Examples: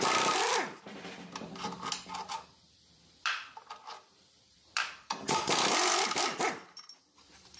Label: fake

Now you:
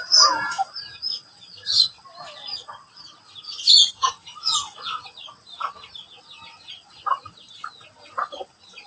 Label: real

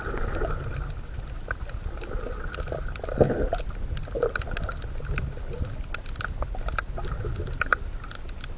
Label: real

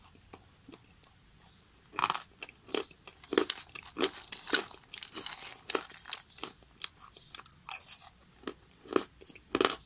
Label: real